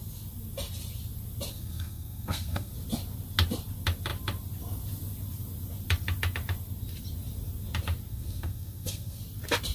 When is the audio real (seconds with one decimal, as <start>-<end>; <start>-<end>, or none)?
0.0-1.5; 2.7-8.1; 9.2-9.7